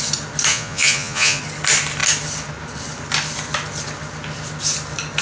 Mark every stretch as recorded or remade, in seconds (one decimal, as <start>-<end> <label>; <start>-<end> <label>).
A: 0.0-0.5 recorded; 0.5-1.4 remade; 1.4-5.2 recorded